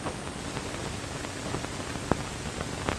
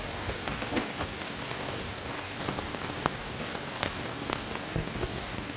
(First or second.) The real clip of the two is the first